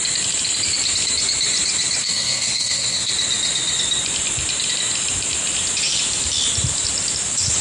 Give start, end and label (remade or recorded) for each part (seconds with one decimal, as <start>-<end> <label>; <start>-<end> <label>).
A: 0.0-2.0 recorded; 2.0-3.1 remade; 3.1-7.6 recorded